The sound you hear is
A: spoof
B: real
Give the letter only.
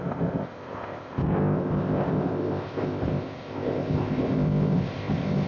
A